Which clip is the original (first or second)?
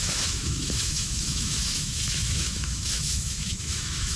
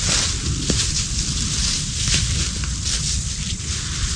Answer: second